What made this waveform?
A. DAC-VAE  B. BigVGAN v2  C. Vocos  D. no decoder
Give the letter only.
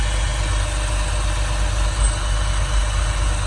D